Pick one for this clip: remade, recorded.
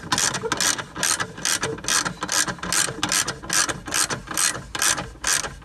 recorded